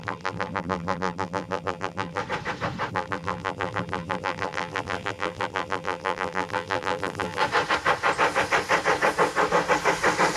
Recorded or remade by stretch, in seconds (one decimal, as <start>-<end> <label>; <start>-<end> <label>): 0.0-2.2 remade; 2.2-2.9 recorded; 2.9-7.4 remade; 7.4-10.4 recorded